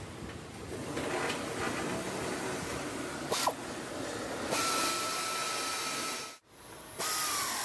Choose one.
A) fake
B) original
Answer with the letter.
B